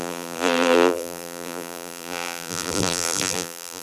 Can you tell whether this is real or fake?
fake